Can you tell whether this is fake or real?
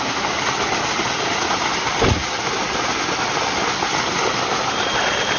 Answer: real